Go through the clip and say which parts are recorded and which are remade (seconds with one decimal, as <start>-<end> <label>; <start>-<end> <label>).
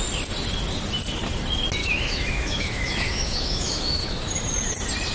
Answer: 0.0-1.8 recorded; 1.8-4.3 remade; 4.3-5.1 recorded